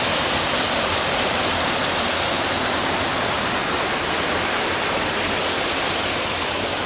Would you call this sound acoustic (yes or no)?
yes